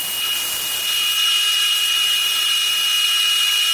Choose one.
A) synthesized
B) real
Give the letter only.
B